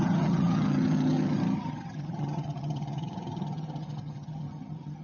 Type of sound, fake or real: fake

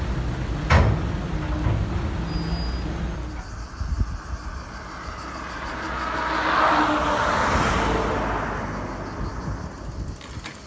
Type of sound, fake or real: real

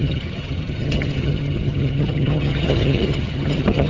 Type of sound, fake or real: fake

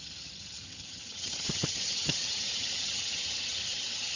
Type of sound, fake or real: fake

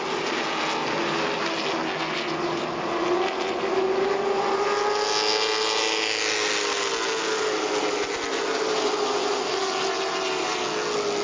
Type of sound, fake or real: real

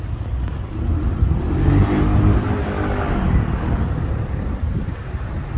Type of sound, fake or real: real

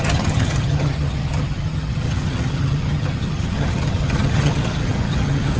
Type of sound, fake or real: fake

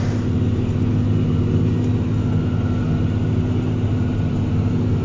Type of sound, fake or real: real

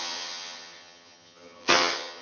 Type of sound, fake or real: fake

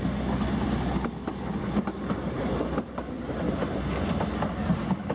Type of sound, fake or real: real